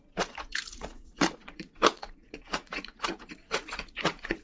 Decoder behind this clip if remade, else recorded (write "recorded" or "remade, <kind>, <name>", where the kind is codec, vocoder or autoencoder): remade, vocoder, Vocos